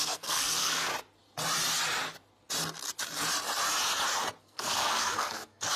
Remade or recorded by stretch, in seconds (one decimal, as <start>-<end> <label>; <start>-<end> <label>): 0.0-0.9 remade; 0.9-4.4 recorded; 4.4-5.8 remade